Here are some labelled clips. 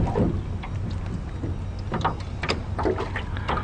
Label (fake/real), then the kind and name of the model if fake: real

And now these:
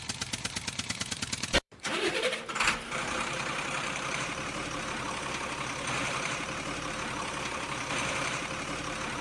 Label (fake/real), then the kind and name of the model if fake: fake, vocoder, BigVGAN v2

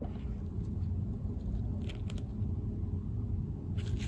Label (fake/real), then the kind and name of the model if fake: real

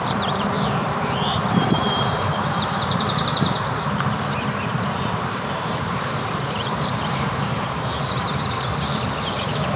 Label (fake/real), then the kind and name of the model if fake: fake, vocoder, BigVGAN v2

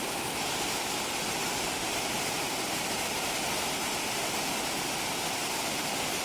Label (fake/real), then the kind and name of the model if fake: real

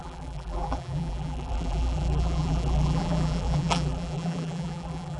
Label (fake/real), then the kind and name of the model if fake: fake, vocoder, BigVGAN v2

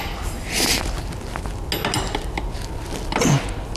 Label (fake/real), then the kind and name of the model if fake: real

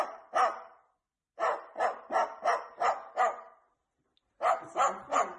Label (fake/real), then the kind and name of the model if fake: real